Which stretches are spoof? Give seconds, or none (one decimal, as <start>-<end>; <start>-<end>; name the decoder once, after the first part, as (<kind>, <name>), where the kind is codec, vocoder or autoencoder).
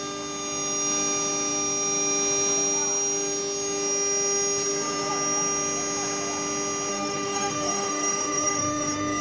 6.9-9.2 (autoencoder, DAC-VAE)